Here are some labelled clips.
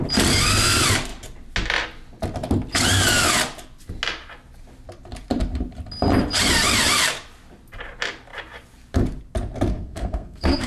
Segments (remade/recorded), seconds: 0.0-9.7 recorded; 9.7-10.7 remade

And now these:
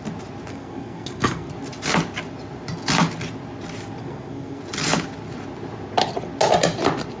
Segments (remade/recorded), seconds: 0.0-0.5 recorded; 0.5-1.5 remade; 1.5-4.0 recorded; 4.0-4.6 remade; 4.6-7.2 recorded

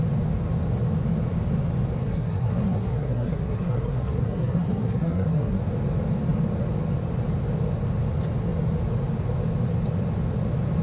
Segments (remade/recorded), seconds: 0.0-2.0 recorded; 2.0-5.6 remade; 5.6-10.8 recorded

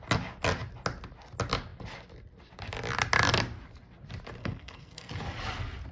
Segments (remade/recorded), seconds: 0.0-4.4 recorded; 4.4-5.1 remade; 5.1-5.9 recorded

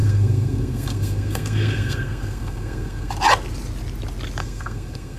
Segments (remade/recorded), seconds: 0.0-3.1 remade; 3.1-4.4 recorded; 4.4-5.2 remade

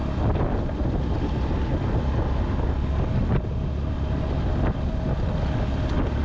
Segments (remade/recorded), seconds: 0.0-6.2 recorded

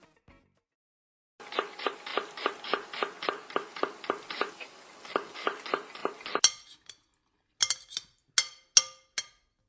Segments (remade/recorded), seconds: 0.0-9.7 recorded

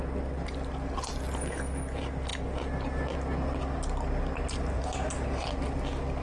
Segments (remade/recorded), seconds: 0.0-6.2 recorded